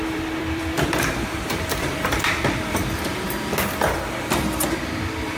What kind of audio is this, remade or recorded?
remade